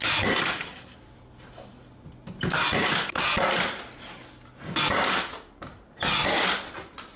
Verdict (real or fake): real